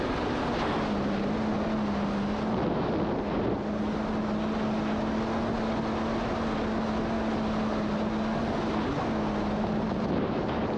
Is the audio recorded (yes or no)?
yes